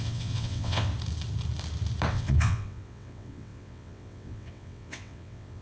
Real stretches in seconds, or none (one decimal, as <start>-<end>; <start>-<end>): 0.9-2.1